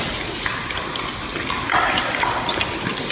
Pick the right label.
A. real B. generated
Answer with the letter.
A